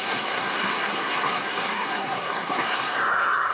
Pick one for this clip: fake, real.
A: fake